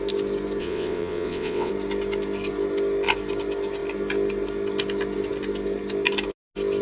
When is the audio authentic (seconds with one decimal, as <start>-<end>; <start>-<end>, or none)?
0.0-0.6; 1.7-6.8